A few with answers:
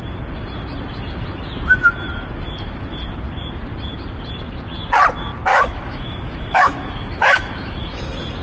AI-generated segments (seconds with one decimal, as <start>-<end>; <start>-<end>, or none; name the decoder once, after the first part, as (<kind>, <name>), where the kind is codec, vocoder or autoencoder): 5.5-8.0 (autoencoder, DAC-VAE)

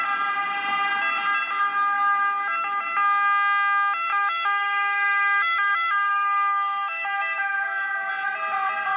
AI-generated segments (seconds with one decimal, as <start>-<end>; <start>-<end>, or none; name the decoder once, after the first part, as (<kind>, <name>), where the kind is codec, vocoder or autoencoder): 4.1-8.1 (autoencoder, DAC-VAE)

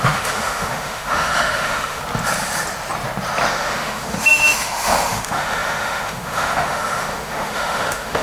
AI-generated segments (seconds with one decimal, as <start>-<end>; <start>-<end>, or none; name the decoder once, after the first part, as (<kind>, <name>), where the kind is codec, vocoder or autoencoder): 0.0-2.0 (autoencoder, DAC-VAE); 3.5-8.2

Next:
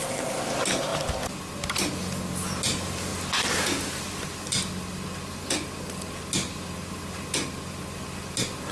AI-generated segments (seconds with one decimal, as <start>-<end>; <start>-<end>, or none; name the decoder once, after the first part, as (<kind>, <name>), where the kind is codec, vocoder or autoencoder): none

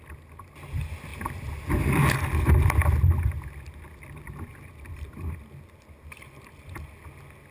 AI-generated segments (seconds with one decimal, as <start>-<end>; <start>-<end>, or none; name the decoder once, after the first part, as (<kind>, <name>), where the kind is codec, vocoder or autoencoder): none

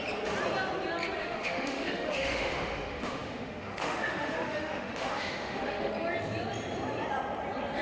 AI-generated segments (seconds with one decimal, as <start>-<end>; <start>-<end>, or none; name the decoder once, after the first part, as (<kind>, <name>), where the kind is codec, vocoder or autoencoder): 1.2-5.9 (autoencoder, DAC-VAE)